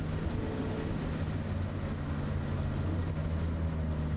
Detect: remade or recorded recorded